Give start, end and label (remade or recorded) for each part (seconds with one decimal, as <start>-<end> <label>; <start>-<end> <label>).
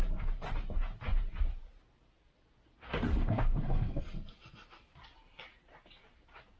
0.0-3.1 recorded; 3.1-4.0 remade; 4.0-6.6 recorded